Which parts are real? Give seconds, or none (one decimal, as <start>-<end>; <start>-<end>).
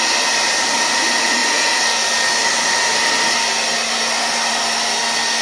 0.0-5.4